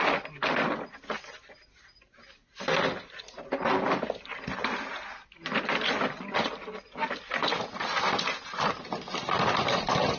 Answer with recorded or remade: recorded